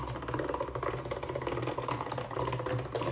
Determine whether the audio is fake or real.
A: real